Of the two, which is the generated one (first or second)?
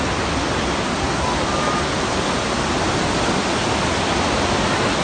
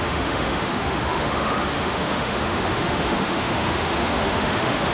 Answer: second